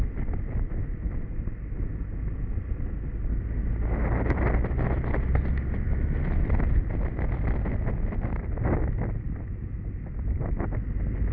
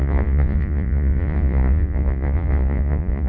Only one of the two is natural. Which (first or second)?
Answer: first